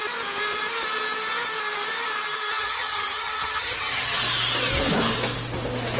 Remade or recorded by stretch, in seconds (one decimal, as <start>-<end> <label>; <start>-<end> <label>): 0.0-2.6 recorded; 2.6-4.2 remade; 4.2-6.0 recorded